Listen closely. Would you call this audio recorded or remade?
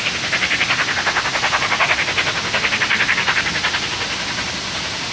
recorded